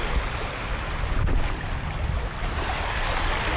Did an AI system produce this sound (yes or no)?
no